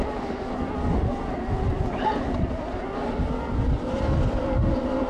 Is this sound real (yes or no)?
yes